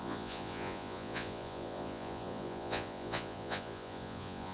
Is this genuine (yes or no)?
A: no